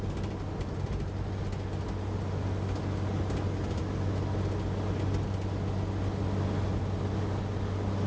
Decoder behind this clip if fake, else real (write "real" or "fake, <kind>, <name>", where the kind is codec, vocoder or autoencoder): real